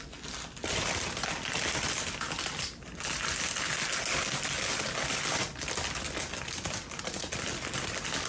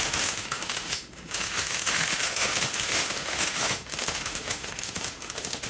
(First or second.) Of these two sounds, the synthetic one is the second